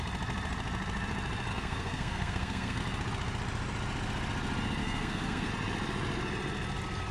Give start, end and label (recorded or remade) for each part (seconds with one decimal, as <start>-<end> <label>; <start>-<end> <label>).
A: 0.0-1.5 recorded; 1.5-2.8 remade; 2.8-4.8 recorded; 4.8-5.5 remade; 5.5-7.1 recorded